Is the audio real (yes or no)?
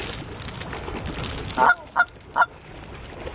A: yes